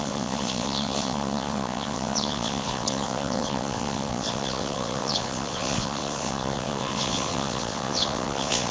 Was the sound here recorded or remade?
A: remade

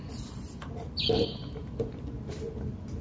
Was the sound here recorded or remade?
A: recorded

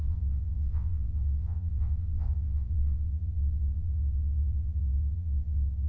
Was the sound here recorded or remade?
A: remade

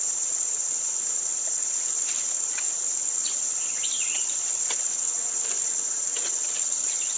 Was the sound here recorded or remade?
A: remade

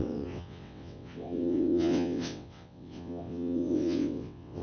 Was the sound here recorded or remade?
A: remade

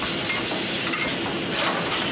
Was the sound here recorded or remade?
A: recorded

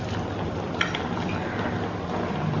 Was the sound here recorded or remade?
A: recorded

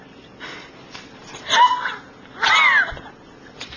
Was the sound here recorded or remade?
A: recorded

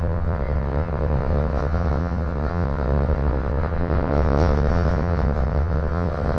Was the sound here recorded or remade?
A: remade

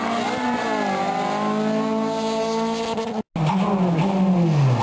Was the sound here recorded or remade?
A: recorded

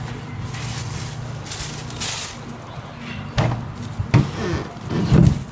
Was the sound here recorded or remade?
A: recorded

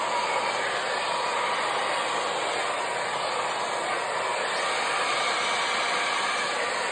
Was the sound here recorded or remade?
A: recorded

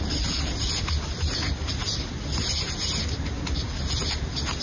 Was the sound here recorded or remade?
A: recorded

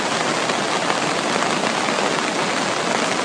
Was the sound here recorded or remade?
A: recorded